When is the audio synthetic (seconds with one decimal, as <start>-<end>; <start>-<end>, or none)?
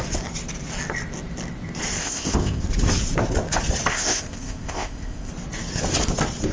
2.0-2.6; 3.9-5.3